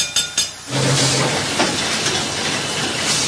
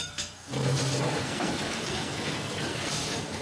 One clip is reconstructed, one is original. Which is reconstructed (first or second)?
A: second